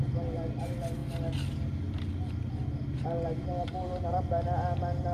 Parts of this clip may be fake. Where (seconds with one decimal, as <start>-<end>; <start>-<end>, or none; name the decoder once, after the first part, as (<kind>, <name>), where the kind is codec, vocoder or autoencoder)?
none